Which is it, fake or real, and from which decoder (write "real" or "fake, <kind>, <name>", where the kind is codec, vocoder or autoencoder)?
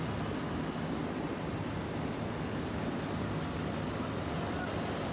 real